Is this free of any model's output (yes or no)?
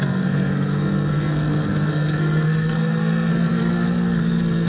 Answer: no